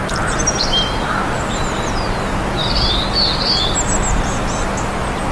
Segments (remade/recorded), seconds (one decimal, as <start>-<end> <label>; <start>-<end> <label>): 0.0-5.3 recorded